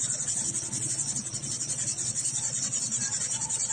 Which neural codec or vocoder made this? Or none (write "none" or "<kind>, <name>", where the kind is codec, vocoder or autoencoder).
vocoder, Vocos